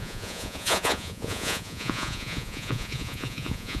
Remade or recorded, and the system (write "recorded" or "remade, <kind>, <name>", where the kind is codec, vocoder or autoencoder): remade, vocoder, Vocos